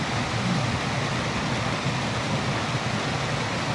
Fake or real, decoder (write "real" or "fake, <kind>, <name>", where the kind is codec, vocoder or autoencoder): real